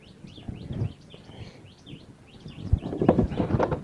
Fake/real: real